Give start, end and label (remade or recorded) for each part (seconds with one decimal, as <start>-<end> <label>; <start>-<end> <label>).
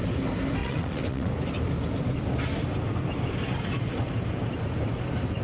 0.0-0.6 recorded; 0.6-1.3 remade; 1.3-5.4 recorded